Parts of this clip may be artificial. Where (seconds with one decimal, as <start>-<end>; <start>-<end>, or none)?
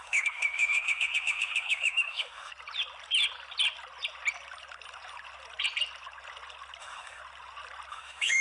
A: 0.0-2.5; 6.8-7.2; 7.9-8.4